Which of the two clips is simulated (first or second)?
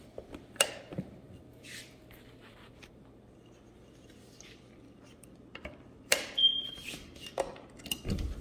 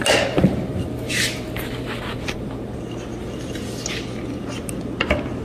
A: first